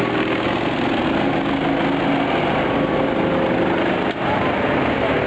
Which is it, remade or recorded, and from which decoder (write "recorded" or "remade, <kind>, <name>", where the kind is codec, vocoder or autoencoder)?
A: recorded